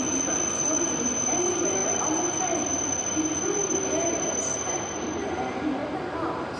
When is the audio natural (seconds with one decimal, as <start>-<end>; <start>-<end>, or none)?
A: 0.0-5.8